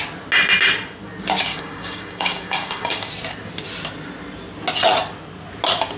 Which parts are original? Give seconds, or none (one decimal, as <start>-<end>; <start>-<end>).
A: 0.0-1.5; 3.1-6.0